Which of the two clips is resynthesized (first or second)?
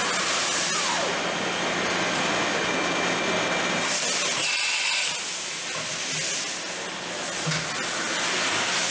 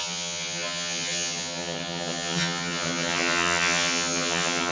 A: second